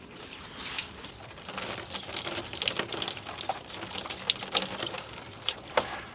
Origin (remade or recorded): recorded